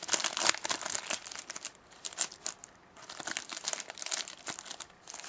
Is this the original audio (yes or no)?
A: yes